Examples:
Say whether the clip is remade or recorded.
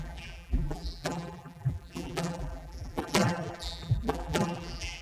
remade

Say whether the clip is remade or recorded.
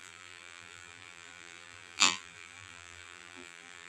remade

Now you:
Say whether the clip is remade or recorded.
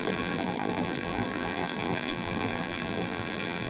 remade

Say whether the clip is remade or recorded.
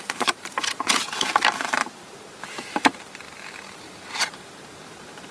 remade